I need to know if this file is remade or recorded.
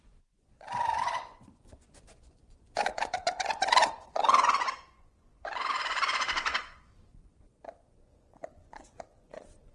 remade